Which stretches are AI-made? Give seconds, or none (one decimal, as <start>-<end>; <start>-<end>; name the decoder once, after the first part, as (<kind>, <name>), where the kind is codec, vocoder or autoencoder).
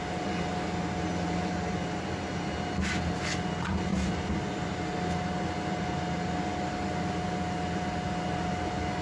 none